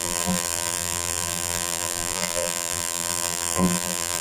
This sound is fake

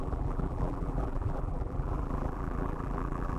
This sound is fake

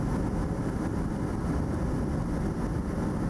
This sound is real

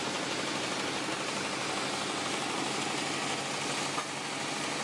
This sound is real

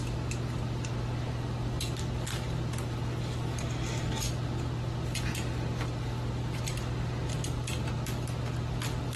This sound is real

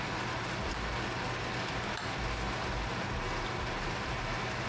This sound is real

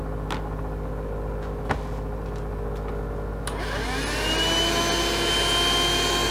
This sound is real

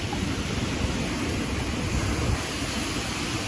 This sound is fake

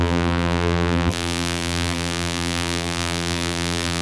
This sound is fake